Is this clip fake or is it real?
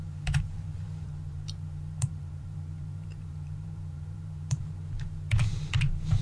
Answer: fake